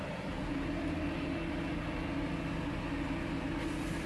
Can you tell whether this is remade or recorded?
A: recorded